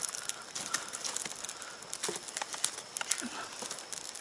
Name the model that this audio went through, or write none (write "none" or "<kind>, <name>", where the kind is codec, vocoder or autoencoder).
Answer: none